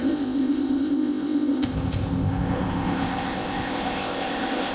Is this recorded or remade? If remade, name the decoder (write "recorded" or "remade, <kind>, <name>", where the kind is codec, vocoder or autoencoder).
remade, codec, ZipCodec